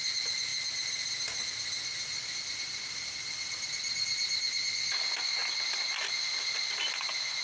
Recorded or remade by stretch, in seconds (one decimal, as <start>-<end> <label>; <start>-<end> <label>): 0.0-0.5 remade; 0.5-2.1 recorded; 2.1-5.4 remade; 5.4-6.2 recorded; 6.2-7.4 remade